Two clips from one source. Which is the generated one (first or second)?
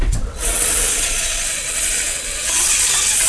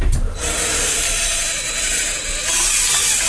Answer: first